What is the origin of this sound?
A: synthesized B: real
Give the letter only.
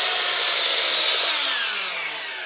B